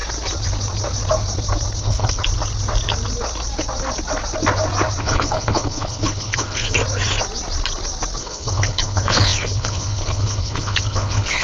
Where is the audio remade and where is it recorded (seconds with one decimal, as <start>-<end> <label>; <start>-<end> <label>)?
0.0-1.8 recorded; 1.8-2.2 remade; 2.2-5.0 recorded; 5.0-6.8 remade; 6.8-8.2 recorded; 8.2-11.4 remade